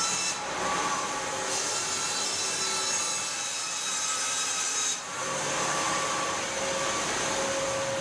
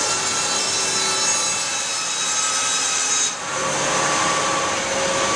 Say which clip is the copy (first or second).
first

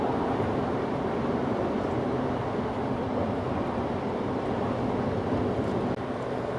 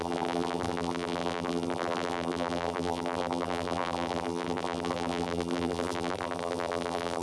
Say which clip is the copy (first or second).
second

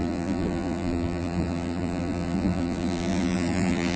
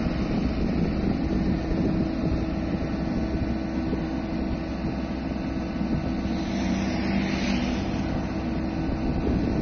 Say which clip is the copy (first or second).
first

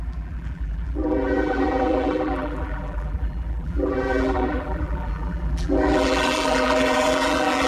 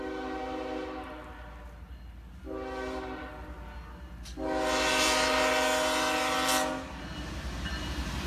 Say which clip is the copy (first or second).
first